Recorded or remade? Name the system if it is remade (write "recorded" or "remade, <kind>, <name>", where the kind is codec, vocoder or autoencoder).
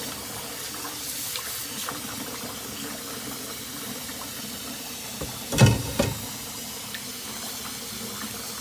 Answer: recorded